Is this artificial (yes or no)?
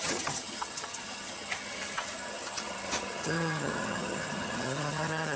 yes